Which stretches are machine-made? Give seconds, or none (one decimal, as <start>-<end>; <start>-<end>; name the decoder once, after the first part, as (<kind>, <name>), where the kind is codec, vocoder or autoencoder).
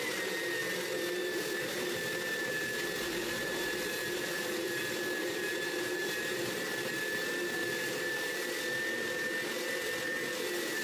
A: 1.2-4.8 (vocoder, BigVGAN v2); 5.2-6.9; 7.6-8.4